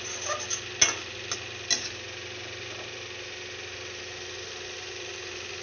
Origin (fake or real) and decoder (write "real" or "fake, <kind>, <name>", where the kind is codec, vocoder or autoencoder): real